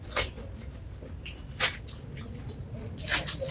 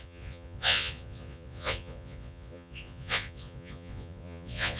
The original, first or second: first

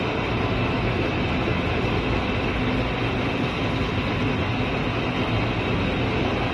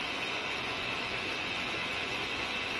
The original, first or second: first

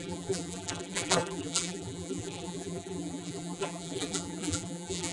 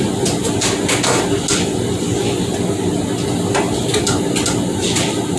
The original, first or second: second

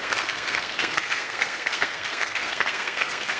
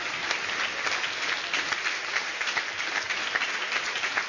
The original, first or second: second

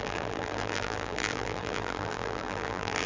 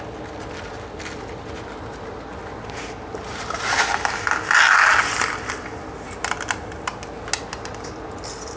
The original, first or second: second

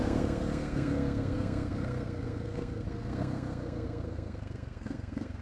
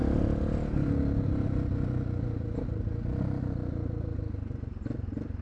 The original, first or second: second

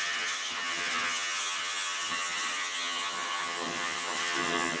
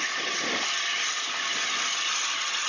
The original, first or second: second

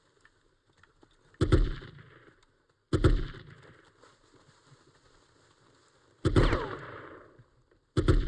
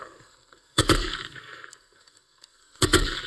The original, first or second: first